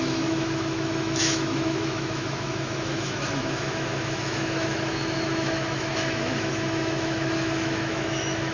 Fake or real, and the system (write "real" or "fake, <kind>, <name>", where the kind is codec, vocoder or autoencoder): fake, autoencoder, DAC-VAE